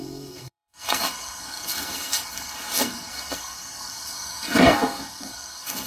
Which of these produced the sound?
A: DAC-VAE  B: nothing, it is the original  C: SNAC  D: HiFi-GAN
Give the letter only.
C